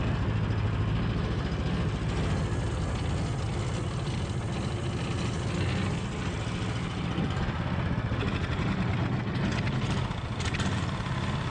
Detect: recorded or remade recorded